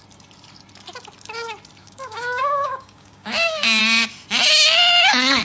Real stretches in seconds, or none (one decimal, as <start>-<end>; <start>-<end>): 0.0-1.8; 3.8-5.4